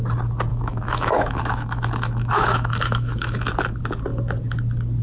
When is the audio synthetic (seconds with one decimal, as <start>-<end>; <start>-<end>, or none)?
0.5-3.5